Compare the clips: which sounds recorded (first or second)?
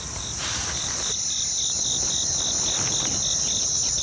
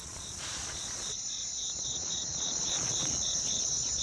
first